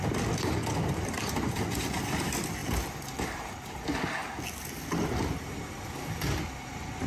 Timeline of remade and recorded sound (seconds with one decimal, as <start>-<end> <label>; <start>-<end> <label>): 0.0-7.1 recorded